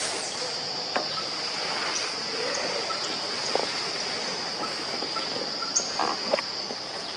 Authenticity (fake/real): real